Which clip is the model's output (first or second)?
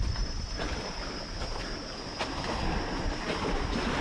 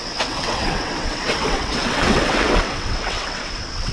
second